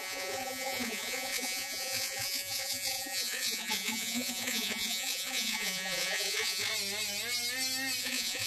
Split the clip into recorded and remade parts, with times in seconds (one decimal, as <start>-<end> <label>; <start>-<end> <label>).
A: 0.0-6.7 remade; 6.7-8.0 recorded; 8.0-8.5 remade